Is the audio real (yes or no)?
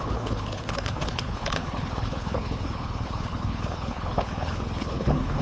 no